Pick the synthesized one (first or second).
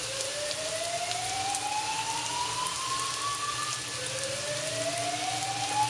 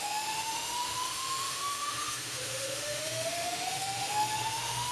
second